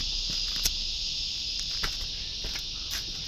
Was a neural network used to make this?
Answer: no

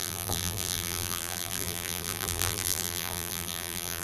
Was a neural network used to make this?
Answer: yes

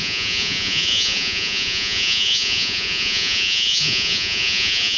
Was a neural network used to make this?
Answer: yes